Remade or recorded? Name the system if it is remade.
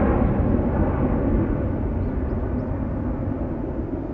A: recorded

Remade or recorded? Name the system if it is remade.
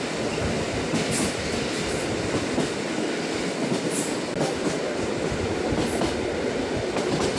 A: recorded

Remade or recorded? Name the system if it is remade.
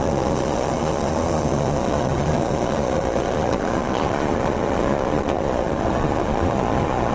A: remade, vocoder, Vocos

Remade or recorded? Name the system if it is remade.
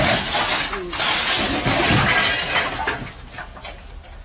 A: recorded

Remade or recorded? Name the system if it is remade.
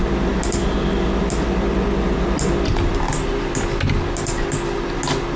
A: recorded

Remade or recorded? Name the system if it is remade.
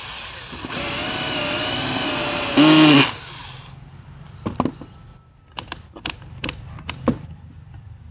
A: recorded